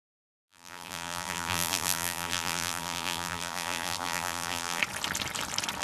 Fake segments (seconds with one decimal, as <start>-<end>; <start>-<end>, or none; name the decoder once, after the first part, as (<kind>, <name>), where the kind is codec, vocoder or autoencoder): 0.0-4.8 (vocoder, BigVGAN v2)

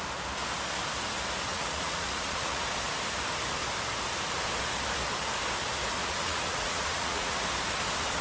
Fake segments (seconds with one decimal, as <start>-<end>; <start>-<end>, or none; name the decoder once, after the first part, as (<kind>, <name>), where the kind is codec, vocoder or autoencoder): 1.5-2.6 (vocoder, Vocos); 6.0-7.4

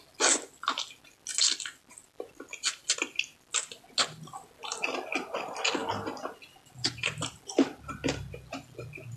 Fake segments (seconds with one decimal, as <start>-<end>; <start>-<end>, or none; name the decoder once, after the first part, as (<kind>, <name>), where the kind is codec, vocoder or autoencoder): none

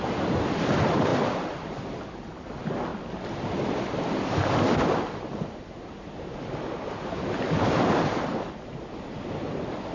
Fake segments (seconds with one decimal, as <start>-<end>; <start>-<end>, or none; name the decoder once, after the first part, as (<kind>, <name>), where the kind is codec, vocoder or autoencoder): none

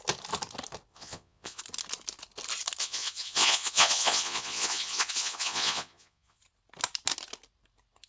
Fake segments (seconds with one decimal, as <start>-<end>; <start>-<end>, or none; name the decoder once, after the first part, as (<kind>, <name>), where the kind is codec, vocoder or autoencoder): 0.9-1.6 (vocoder, Vocos); 2.8-6.4

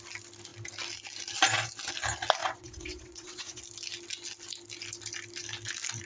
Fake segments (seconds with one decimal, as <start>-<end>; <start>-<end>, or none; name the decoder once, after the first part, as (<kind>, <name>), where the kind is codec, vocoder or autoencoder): 2.4-3.6 (vocoder, WaveNeXt)